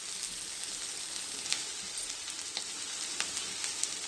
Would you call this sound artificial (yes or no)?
no